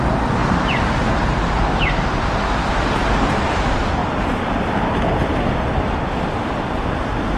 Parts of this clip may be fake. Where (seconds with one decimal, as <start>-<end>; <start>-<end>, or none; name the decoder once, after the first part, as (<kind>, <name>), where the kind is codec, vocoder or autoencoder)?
0.4-3.6 (vocoder, BigVGAN v2); 4.0-5.0